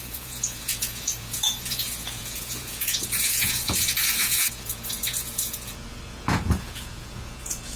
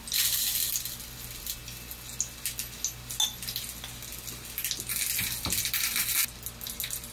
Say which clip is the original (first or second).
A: second